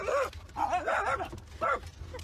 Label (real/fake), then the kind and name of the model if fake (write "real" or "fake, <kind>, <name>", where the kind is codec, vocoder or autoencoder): real